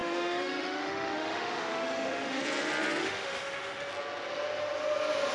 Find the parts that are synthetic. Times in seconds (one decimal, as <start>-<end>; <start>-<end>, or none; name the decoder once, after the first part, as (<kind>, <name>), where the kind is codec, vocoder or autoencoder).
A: 0.0-2.4 (autoencoder, DAC-VAE); 3.0-3.9